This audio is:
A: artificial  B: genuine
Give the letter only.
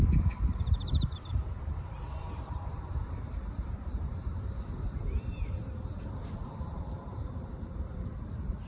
A